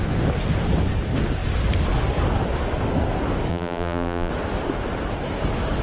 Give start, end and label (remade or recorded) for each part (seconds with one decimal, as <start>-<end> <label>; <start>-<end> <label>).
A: 0.0-3.5 recorded; 3.5-4.3 remade; 4.3-5.8 recorded